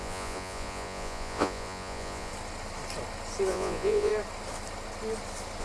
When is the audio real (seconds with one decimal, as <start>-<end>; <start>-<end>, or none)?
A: 2.3-3.5; 4.1-5.6

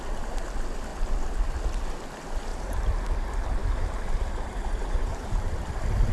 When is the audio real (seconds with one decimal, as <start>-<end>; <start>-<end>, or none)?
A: 0.0-2.5; 3.1-3.6; 5.5-6.1

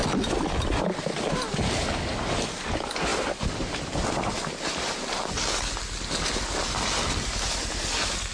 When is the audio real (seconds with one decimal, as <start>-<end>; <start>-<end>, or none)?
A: 0.0-8.3